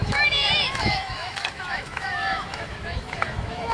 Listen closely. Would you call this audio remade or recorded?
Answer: remade